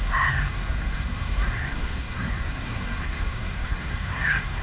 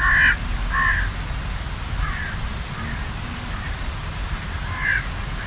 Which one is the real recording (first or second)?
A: second